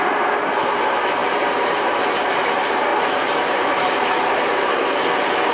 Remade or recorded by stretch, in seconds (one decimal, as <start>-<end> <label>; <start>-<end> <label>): 0.0-1.2 recorded; 1.2-2.0 remade; 2.0-2.9 recorded; 2.9-5.1 remade; 5.1-5.5 recorded